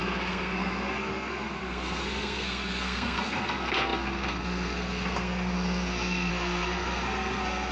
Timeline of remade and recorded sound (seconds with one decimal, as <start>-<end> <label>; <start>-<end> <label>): 0.0-7.7 remade